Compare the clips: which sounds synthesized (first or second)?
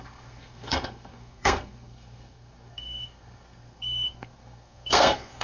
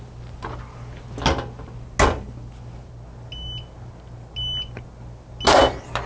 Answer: first